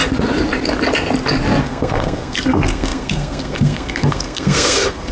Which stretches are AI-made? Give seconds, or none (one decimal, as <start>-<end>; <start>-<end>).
1.6-5.1